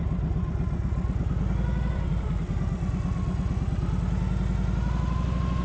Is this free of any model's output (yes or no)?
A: yes